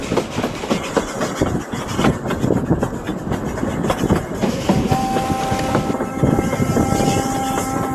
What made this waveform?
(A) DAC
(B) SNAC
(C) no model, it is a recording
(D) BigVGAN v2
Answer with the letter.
C